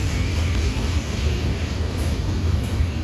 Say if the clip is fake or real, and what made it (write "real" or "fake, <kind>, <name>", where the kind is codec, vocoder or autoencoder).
fake, codec, DAC